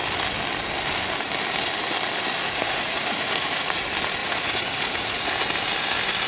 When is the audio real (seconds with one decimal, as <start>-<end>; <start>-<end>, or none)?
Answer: 0.0-2.4; 3.8-4.2; 5.3-6.3